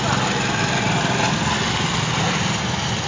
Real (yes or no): yes